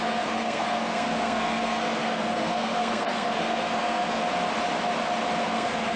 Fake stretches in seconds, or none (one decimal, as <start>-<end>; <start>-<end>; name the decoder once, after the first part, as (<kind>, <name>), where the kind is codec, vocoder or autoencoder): 0.0-4.2 (codec, SNAC); 5.4-6.0